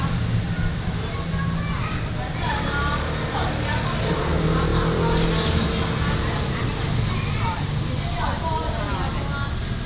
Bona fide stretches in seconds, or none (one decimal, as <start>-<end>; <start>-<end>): 0.0-9.9